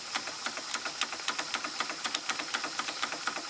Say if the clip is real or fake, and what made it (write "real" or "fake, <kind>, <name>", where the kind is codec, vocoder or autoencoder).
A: real